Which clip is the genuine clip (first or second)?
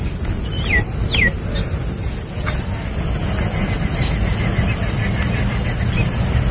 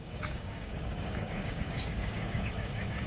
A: first